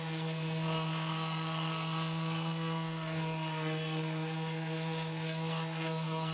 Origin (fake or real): fake